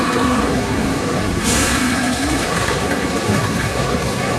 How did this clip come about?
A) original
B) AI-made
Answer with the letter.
B